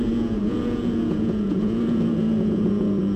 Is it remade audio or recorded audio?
remade